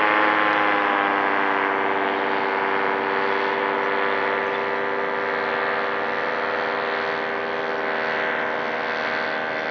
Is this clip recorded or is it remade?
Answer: recorded